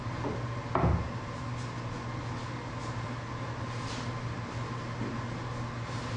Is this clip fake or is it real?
real